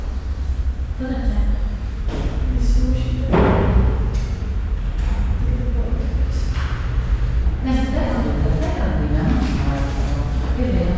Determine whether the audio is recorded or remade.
recorded